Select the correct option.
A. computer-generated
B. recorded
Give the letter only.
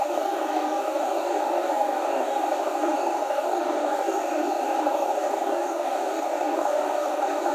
A